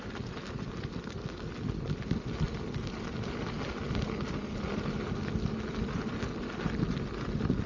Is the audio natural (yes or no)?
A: yes